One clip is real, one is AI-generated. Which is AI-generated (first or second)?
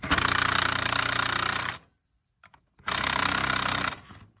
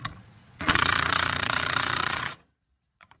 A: second